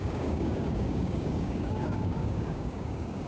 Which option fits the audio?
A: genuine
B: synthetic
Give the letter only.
B